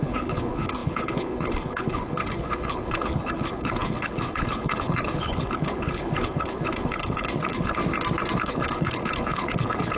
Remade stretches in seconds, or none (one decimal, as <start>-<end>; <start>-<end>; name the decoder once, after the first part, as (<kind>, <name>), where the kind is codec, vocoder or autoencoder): 0.0-7.8 (codec, HILCodec); 8.4-10.0